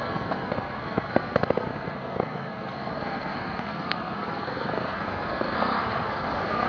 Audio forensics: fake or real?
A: fake